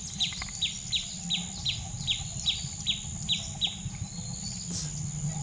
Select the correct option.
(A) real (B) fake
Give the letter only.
A